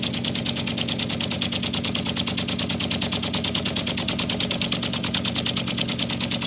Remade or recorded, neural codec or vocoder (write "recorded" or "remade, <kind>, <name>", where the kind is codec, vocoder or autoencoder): recorded